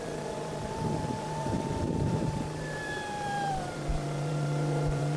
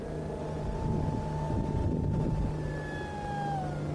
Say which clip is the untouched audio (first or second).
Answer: second